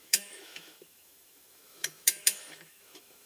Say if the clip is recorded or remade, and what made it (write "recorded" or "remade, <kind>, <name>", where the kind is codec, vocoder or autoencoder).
remade, autoencoder, DAC-VAE